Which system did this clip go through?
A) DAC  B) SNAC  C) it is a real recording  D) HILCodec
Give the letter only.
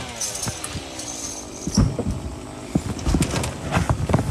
C